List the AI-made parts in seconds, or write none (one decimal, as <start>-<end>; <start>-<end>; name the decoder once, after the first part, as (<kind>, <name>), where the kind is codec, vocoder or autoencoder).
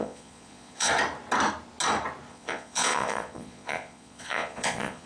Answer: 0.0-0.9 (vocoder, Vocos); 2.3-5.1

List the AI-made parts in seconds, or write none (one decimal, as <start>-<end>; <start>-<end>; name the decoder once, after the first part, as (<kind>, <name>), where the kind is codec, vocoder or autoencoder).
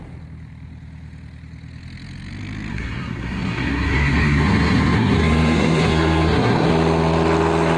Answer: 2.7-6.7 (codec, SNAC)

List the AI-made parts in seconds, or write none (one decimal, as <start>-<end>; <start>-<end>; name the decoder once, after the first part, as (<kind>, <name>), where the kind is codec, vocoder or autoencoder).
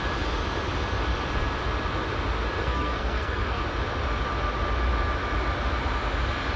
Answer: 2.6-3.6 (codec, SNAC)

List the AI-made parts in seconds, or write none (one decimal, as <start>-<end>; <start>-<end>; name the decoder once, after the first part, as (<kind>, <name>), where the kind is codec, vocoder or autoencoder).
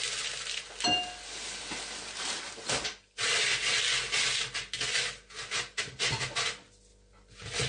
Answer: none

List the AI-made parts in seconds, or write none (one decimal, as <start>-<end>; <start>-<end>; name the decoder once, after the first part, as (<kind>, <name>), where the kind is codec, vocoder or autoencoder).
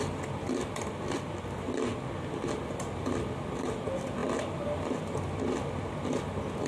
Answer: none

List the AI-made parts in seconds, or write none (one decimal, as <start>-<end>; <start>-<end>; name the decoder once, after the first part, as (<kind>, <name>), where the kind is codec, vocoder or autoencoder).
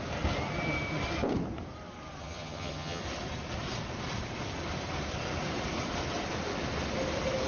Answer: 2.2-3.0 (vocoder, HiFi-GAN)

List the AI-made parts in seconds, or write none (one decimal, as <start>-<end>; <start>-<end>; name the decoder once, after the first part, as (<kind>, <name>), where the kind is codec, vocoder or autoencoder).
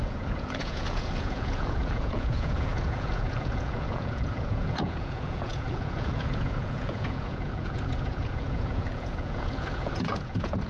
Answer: 0.0-10.7 (vocoder, Vocos)